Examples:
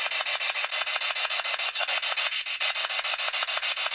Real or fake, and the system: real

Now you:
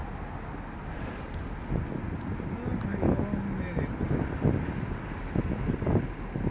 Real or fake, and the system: real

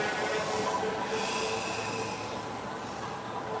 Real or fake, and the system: real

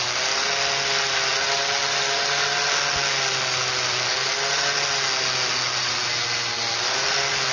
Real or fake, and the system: real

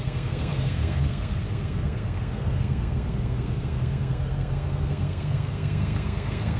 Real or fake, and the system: fake, codec, SNAC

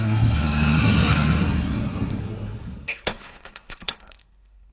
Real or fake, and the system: fake, codec, SNAC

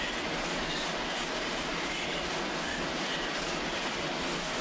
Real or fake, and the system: real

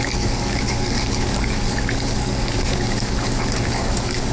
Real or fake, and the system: fake, codec, DAC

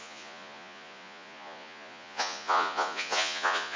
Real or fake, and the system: fake, vocoder, Vocos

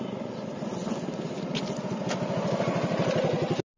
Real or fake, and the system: real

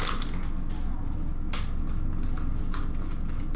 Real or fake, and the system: real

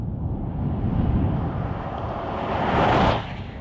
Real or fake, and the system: real